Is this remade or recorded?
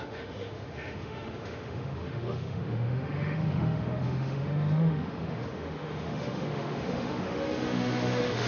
remade